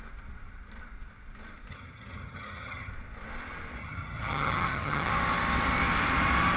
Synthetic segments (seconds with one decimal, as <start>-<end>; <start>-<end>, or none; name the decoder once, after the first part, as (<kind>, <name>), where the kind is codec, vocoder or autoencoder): 1.7-2.9 (vocoder, HiFi-GAN); 3.8-5.1